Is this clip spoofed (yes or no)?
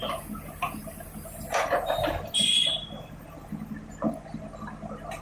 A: no